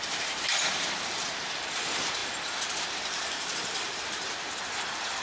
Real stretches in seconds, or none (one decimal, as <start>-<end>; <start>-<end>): 2.2-3.0